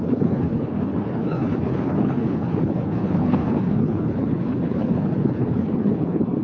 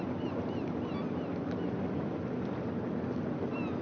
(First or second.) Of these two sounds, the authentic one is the second